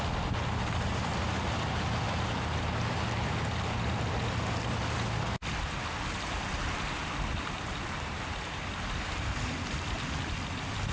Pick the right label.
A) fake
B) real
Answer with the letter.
B